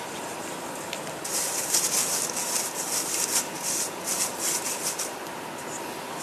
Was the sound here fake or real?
real